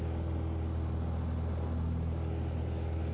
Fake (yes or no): no